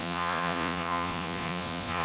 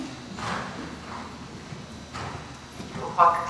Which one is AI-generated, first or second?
first